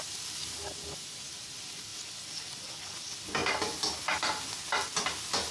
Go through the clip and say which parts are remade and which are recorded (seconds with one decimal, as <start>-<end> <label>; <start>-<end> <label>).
0.0-5.5 recorded